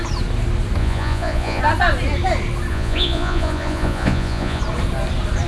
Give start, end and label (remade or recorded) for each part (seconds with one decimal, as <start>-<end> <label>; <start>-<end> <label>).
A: 0.0-0.8 recorded; 0.8-1.6 remade; 1.6-2.7 recorded; 2.7-4.6 remade; 4.6-5.5 recorded